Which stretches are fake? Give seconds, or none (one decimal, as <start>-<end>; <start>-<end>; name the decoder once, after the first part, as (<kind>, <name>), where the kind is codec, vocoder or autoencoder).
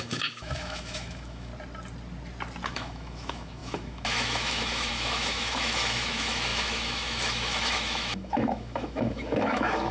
0.0-1.5 (autoencoder, DAC-VAE); 2.7-9.9